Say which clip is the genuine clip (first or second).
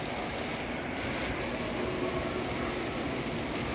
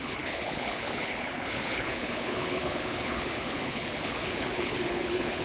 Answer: first